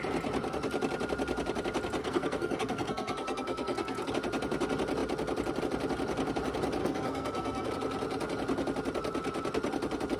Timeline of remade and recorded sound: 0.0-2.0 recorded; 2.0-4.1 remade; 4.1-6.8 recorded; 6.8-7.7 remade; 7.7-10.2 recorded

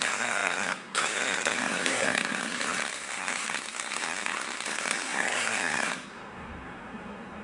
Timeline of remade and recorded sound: 0.0-7.4 remade